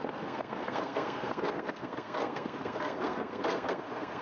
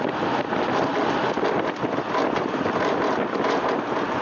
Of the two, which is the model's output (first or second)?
first